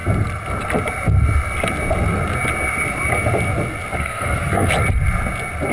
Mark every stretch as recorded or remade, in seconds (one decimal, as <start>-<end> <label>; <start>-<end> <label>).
0.0-3.9 recorded; 3.9-4.7 remade; 4.7-5.7 recorded